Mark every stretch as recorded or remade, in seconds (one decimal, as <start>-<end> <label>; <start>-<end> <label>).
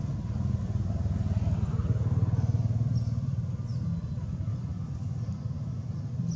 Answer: 0.0-6.4 recorded